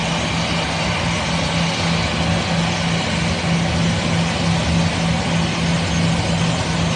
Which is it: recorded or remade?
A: recorded